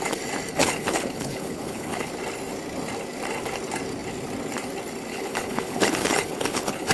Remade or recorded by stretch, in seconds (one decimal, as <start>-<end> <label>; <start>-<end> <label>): 0.0-0.6 recorded; 0.6-2.1 remade; 2.1-5.1 recorded; 5.1-6.9 remade